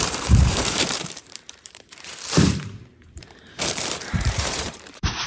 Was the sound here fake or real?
fake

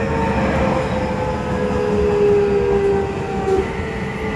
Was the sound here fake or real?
real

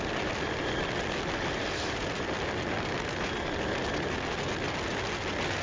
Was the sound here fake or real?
real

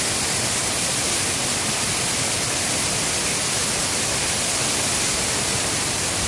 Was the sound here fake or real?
real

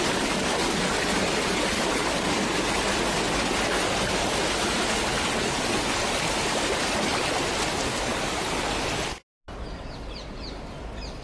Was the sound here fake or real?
real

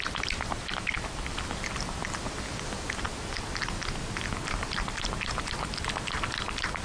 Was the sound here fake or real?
real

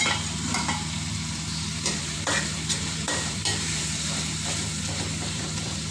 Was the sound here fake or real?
fake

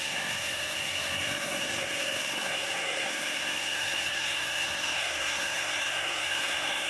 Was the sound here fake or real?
fake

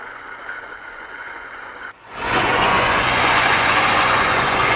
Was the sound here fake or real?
fake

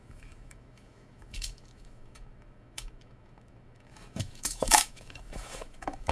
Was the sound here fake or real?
fake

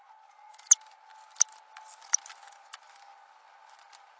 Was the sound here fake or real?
real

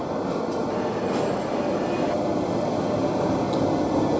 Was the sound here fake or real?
real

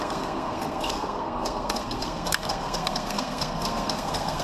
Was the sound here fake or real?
fake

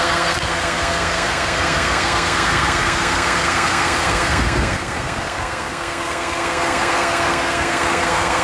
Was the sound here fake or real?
fake